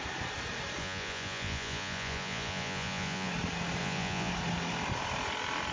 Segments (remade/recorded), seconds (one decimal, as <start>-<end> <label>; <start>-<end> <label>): 0.0-0.8 recorded; 0.8-3.3 remade; 3.3-3.8 recorded; 3.8-4.3 remade; 4.3-5.7 recorded